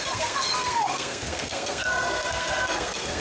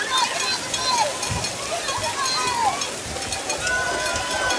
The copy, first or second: first